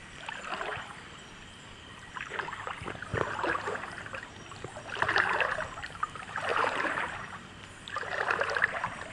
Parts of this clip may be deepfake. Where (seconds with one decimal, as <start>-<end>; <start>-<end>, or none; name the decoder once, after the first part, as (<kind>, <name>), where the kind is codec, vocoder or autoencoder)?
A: 0.0-9.1 (vocoder, BigVGAN v2)